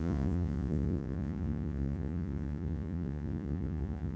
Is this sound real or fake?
fake